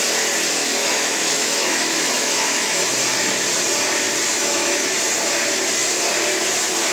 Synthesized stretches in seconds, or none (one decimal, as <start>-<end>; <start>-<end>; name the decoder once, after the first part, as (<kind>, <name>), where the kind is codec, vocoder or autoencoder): 0.6-2.9 (autoencoder, DAC-VAE); 4.4-4.9